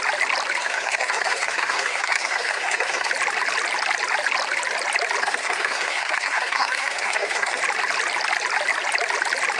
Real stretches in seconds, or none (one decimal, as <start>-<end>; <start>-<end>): 0.0-0.6; 3.1-5.2; 7.6-9.6